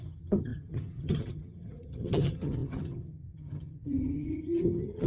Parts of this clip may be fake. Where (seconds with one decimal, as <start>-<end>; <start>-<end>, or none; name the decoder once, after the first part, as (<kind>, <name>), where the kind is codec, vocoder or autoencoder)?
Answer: 0.0-5.1 (vocoder, HiFi-GAN)